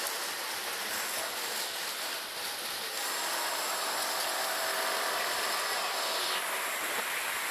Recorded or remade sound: recorded